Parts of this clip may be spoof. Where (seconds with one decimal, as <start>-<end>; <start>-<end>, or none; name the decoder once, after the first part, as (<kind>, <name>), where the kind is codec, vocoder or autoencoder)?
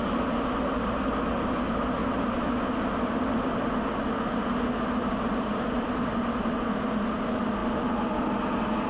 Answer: none